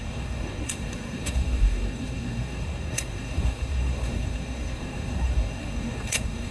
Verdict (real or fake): fake